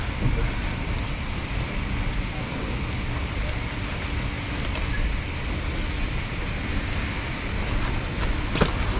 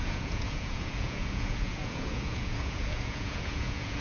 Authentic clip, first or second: first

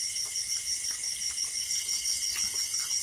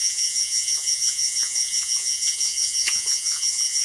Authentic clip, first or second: first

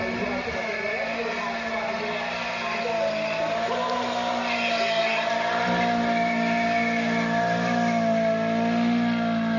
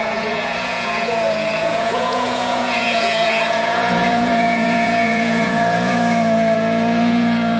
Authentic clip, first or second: first